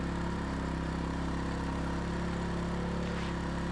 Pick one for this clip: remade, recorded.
remade